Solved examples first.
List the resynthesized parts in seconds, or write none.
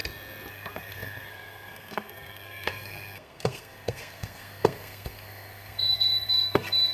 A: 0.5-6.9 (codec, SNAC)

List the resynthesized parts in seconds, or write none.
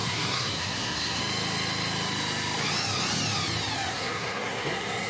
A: 0.0-1.2 (codec, SNAC); 3.9-5.1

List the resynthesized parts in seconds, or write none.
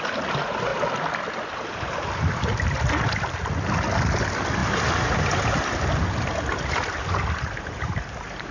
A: none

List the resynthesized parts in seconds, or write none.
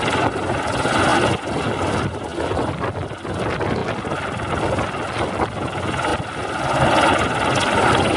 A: none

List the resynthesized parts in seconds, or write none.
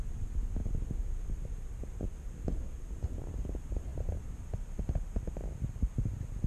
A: none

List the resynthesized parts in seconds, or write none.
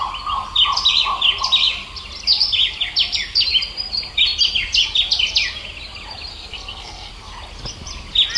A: 6.3-7.1 (codec, SNAC)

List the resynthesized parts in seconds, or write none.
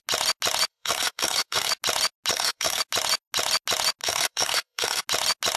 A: 0.7-1.7 (codec, SNAC); 2.3-2.8; 4.0-5.0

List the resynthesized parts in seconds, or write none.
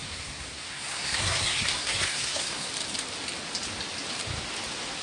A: 0.0-2.7 (codec, SNAC)